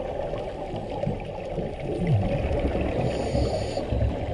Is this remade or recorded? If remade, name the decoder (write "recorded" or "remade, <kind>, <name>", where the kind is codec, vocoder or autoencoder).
recorded